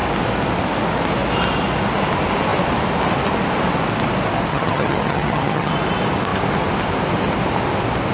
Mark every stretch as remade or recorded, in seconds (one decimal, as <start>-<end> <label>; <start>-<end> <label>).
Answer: 0.0-4.5 recorded; 4.5-5.7 remade; 5.7-8.1 recorded